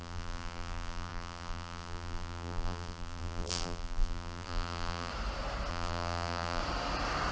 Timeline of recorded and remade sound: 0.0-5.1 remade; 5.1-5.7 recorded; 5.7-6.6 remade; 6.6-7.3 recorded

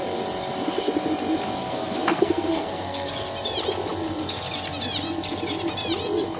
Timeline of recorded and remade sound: 0.0-1.6 recorded; 1.6-3.1 remade; 3.1-6.4 recorded

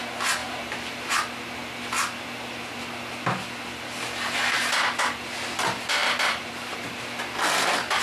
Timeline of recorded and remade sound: 0.0-0.4 recorded; 0.4-1.1 remade; 1.1-6.0 recorded; 6.0-6.5 remade; 6.5-8.0 recorded

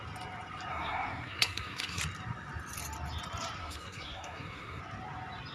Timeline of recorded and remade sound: 0.0-0.7 recorded; 0.7-2.0 remade; 2.0-3.6 recorded; 3.6-4.8 remade; 4.8-5.5 recorded

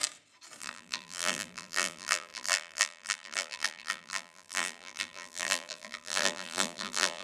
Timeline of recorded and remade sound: 0.0-0.6 recorded; 0.6-7.2 remade

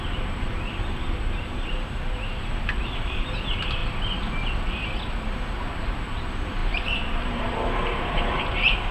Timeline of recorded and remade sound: 0.0-3.8 remade; 3.8-5.2 recorded; 5.2-8.9 remade

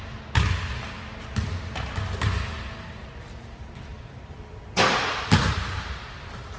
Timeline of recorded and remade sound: 0.0-3.9 recorded; 3.9-5.5 remade; 5.5-6.6 recorded